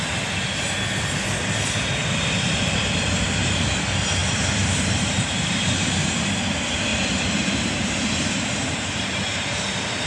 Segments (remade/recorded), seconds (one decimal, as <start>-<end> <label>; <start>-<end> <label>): 0.0-2.0 recorded; 2.0-2.6 remade; 2.6-4.2 recorded; 4.2-6.3 remade; 6.3-6.9 recorded; 6.9-10.1 remade